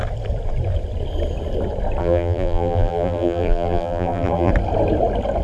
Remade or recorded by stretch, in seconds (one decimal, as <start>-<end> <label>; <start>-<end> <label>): 0.0-2.0 recorded; 2.0-4.5 remade; 4.5-5.4 recorded